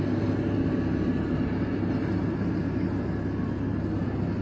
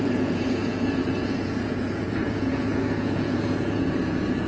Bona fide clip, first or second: first